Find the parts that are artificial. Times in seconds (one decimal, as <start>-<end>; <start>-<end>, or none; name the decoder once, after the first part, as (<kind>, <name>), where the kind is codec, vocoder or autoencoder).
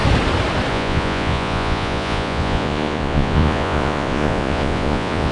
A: 0.7-5.3 (vocoder, Vocos)